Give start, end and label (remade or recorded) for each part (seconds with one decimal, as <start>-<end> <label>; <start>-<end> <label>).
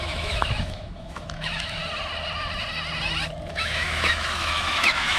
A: 0.0-1.8 remade; 1.8-3.5 recorded; 3.5-5.2 remade